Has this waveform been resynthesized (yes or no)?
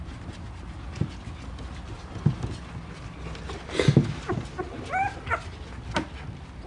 no